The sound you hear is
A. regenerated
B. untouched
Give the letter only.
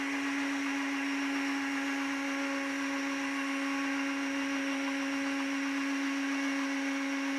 B